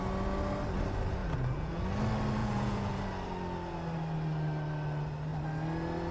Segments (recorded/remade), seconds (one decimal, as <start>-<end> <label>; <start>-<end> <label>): 0.0-1.2 recorded; 1.2-1.8 remade; 1.8-2.4 recorded; 2.4-3.0 remade; 3.0-6.1 recorded